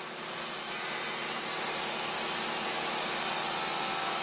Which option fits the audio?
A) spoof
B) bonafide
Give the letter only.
B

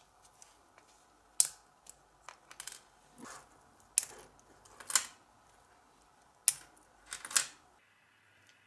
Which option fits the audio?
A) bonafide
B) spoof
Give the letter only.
A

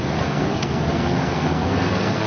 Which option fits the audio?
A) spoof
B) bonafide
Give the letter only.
A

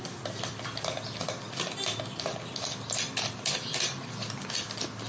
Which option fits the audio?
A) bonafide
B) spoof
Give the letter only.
A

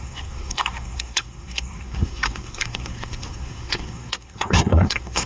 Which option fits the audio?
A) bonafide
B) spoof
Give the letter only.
B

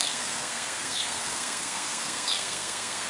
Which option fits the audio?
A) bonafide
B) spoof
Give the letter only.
B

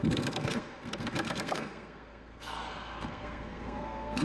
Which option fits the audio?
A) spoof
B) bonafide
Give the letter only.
A